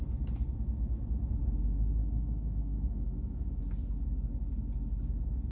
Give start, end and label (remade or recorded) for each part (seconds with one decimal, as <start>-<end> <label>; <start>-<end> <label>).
0.0-2.0 recorded; 2.0-3.6 remade; 3.6-5.5 recorded